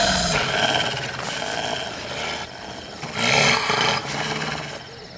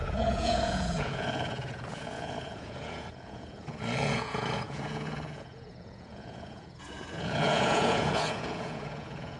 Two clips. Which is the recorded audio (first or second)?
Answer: first